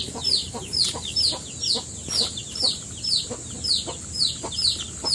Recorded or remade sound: remade